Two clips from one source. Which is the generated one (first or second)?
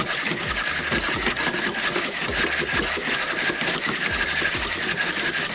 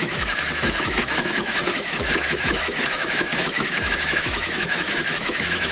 second